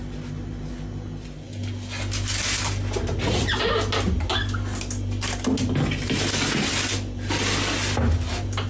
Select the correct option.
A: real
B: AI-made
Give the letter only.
A